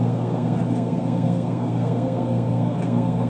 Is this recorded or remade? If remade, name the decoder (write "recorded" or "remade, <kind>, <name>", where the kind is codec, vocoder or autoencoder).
remade, codec, SNAC